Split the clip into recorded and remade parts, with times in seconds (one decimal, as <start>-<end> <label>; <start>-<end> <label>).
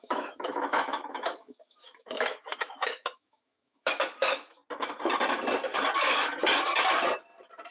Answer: 0.0-4.6 remade; 4.6-7.7 recorded